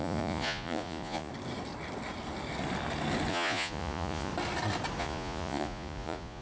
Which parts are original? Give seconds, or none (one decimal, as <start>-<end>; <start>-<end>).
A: 1.3-3.3; 4.3-5.0

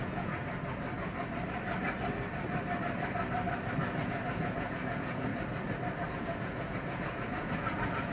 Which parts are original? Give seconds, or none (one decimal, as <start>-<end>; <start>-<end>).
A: 0.4-4.1; 5.3-6.1

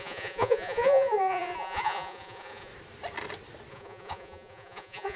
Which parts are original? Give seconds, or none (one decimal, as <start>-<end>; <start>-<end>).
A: 2.7-3.7

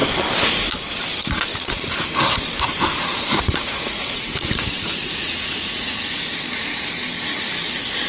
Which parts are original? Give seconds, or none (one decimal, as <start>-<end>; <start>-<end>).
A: 0.0-1.5; 2.2-3.1; 6.0-8.1

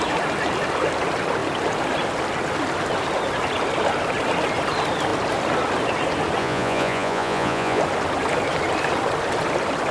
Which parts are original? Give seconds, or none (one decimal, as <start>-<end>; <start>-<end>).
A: 0.0-6.4; 7.8-9.9

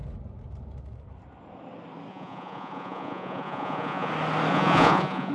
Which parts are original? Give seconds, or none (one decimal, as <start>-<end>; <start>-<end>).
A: 0.0-2.1; 4.1-4.5

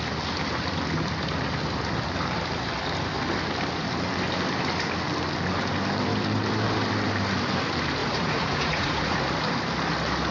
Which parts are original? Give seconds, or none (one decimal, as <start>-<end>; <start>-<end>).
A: 0.0-8.0; 9.2-10.3

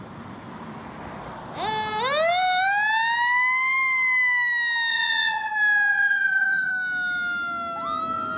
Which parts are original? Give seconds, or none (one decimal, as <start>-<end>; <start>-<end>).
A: 0.0-4.9; 5.5-5.9; 6.7-8.4